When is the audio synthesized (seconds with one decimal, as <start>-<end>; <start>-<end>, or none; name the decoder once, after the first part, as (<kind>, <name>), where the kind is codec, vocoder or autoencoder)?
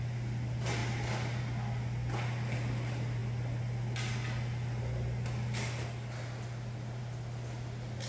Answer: none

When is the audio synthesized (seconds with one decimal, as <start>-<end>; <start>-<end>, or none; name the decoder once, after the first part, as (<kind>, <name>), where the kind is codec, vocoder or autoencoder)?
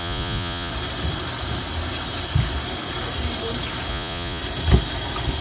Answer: 0.0-0.7 (vocoder, Vocos); 3.9-4.4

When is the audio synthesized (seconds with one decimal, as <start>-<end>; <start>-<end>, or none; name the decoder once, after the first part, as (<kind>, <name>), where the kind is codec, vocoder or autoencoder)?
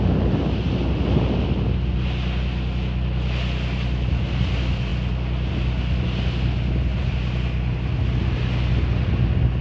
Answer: none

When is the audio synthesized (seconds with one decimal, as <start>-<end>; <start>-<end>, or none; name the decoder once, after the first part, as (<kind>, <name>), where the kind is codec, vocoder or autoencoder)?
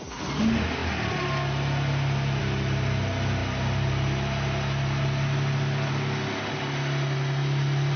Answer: none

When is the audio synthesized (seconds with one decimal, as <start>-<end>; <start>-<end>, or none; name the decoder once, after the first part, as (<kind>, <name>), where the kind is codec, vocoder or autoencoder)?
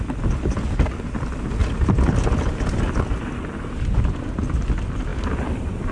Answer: none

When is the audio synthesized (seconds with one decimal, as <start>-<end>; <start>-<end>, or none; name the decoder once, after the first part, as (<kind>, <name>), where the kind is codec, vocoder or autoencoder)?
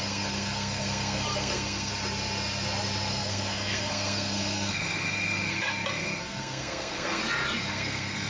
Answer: 0.0-1.9 (codec, SNAC); 3.1-7.2; 7.7-8.3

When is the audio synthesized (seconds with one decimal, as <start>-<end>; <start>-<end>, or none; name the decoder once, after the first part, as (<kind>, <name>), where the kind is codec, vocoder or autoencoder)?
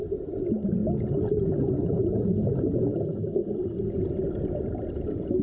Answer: none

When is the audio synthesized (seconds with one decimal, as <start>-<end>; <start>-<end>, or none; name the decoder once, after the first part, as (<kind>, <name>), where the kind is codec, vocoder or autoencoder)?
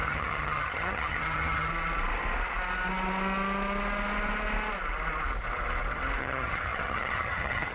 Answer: 0.0-1.7 (vocoder, HiFi-GAN); 6.2-7.7